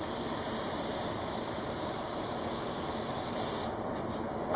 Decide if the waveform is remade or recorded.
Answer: remade